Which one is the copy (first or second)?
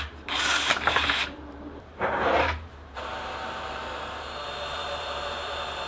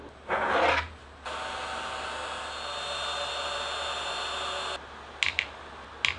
first